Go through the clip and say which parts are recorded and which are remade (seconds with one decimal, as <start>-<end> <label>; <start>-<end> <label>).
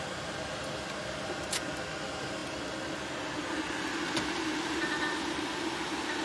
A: 0.0-6.2 recorded